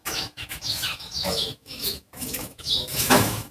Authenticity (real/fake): fake